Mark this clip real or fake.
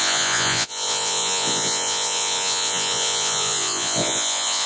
fake